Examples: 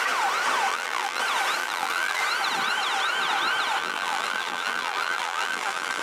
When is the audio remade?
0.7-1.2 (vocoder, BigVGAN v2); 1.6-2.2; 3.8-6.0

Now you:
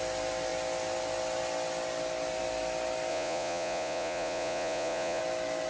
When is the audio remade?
3.1-5.2 (vocoder, Vocos)